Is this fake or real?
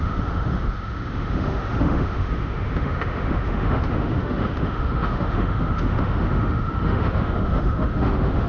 fake